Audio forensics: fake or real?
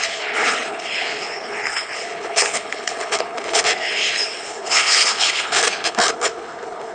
fake